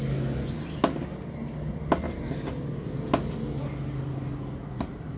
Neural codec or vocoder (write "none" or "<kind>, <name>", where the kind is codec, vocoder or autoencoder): none